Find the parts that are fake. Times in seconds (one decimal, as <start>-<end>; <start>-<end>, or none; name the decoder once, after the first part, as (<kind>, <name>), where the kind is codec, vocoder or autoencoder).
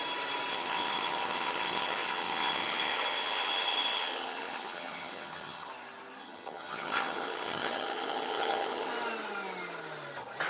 0.5-5.7 (vocoder, HiFi-GAN); 6.2-8.9